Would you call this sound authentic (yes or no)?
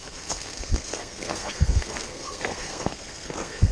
no